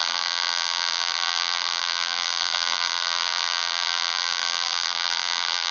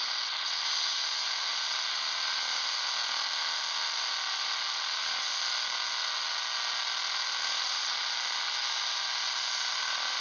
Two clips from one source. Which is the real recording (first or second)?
second